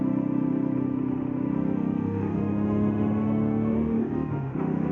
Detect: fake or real fake